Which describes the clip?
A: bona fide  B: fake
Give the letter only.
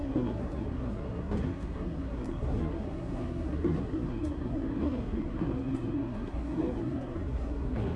B